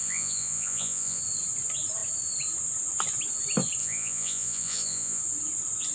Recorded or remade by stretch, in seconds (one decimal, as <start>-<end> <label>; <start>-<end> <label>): 0.0-1.2 remade; 1.2-3.8 recorded; 3.8-5.2 remade; 5.2-5.9 recorded